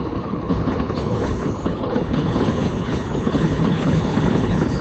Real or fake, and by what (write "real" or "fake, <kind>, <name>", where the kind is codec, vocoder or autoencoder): fake, codec, HILCodec